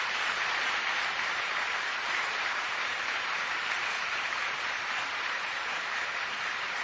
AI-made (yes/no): yes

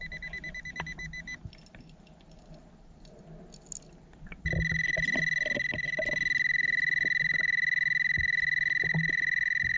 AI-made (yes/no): no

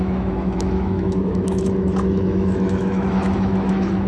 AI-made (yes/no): yes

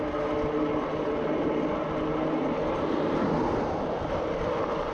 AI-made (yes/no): no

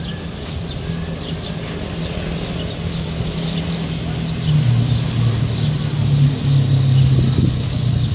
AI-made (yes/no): no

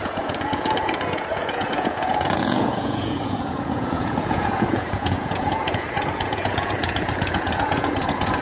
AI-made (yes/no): yes